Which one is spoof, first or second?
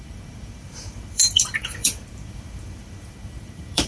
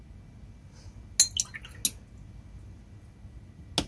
first